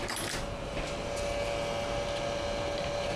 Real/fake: real